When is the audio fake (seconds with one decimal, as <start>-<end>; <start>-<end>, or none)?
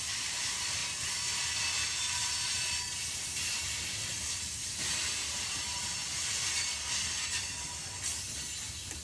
4.1-6.5